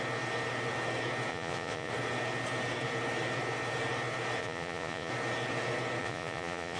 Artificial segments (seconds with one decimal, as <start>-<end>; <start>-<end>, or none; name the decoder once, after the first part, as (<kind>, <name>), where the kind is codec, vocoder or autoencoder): 1.3-1.9 (vocoder, Vocos); 4.4-5.1; 6.0-6.8